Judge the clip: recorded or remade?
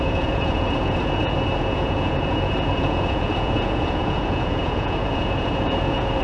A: remade